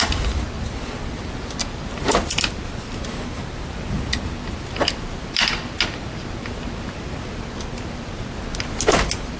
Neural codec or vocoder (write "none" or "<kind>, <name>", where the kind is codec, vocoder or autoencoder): none